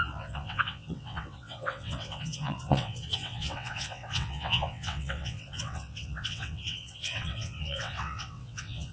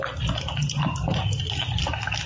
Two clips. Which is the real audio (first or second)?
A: second